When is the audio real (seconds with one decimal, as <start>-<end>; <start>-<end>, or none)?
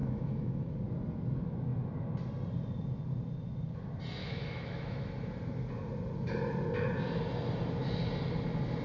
0.7-4.2; 5.1-8.8